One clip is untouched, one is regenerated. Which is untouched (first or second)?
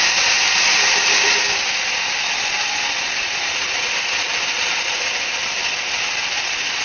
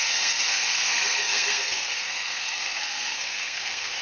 first